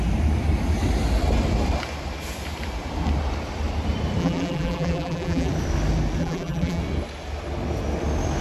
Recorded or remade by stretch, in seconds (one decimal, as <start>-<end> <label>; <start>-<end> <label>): 0.0-4.2 recorded; 4.2-5.5 remade; 5.5-6.2 recorded; 6.2-6.8 remade; 6.8-8.4 recorded